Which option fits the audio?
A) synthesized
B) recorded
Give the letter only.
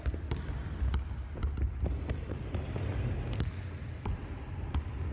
B